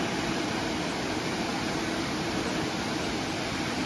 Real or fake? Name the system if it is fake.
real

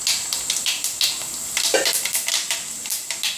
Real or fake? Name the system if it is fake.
real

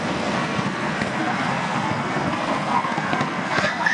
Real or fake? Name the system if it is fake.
fake, codec, SNAC